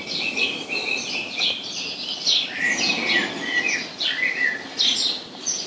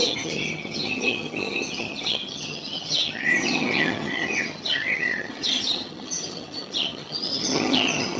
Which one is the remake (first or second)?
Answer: second